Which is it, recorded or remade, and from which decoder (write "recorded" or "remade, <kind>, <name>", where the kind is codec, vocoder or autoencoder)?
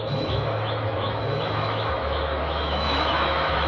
remade, autoencoder, DAC-VAE